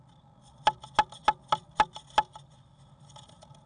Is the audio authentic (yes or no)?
yes